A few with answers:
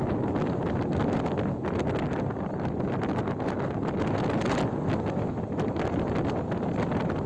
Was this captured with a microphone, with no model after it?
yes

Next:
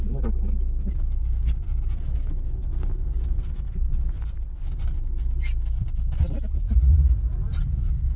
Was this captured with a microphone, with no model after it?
yes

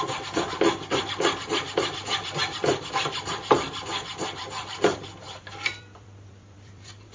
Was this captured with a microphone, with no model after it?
no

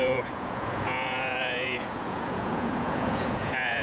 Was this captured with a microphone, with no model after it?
no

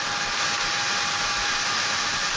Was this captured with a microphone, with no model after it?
yes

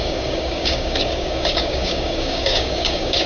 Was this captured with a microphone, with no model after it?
no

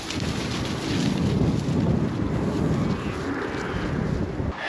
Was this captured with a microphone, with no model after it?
yes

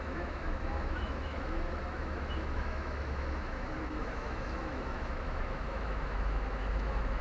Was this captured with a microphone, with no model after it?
no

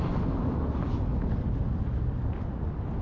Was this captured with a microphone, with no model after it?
yes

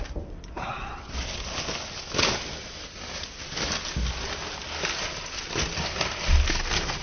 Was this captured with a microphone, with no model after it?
yes